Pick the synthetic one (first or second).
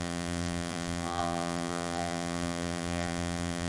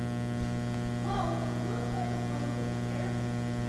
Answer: first